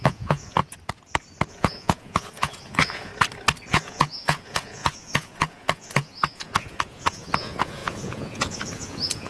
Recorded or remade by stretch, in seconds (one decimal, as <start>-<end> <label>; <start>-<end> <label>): 0.0-0.6 remade; 0.6-1.5 recorded; 1.5-3.1 remade; 3.1-3.7 recorded; 3.7-9.3 remade